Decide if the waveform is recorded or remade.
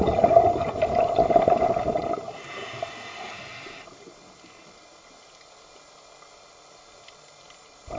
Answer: recorded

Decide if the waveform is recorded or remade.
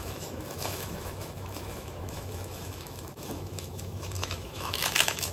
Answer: remade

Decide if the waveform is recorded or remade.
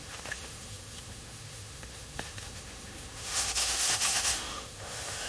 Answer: remade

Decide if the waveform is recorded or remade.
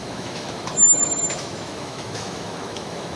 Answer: remade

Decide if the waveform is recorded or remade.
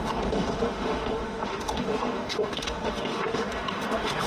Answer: remade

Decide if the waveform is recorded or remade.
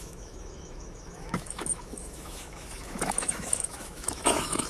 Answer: remade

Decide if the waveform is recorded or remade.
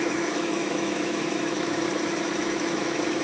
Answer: remade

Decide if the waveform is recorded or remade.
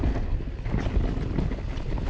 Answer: recorded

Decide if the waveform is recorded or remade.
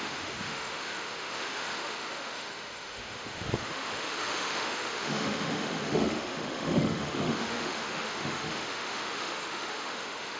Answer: remade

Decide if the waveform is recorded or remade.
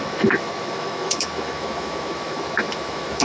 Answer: remade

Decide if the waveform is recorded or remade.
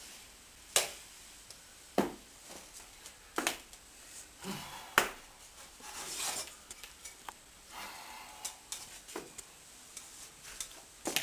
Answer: recorded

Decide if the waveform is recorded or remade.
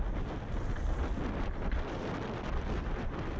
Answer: recorded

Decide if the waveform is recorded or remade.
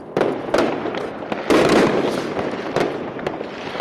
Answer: recorded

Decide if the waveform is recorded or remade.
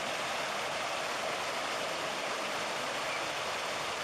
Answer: recorded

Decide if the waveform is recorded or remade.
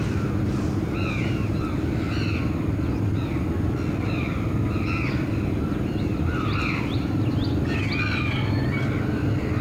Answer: recorded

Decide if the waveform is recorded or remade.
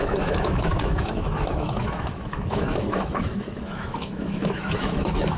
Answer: remade